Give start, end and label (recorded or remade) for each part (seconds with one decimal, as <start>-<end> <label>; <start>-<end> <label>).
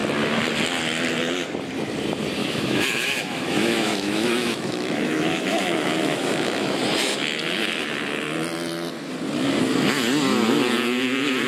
0.0-2.4 recorded; 2.4-6.8 remade; 6.8-11.5 recorded